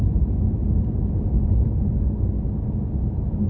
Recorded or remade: recorded